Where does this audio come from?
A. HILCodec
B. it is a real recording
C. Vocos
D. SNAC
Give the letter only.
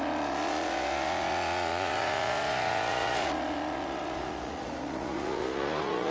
C